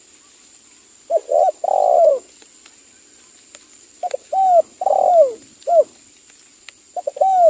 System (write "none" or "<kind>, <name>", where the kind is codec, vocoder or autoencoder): none